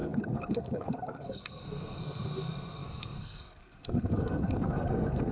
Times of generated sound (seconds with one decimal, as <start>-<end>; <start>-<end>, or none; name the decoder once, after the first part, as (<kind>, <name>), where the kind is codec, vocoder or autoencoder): 0.0-5.3 (codec, SNAC)